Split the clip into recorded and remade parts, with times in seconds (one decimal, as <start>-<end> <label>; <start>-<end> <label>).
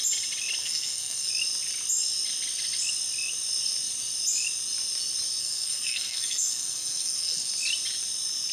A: 0.0-0.6 recorded; 0.6-1.3 remade; 1.3-5.4 recorded; 5.4-7.5 remade; 7.5-8.5 recorded